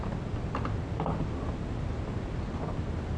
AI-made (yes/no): no